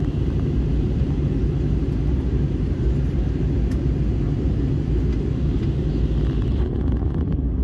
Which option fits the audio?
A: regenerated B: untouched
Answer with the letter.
B